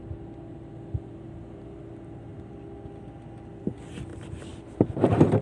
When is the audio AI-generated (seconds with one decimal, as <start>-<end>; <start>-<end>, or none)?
none